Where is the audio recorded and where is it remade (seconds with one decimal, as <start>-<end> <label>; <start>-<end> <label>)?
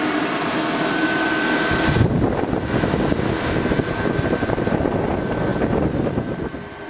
0.0-6.9 recorded